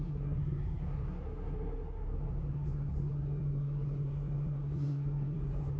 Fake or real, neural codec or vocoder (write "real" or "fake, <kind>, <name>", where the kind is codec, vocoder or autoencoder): fake, codec, SNAC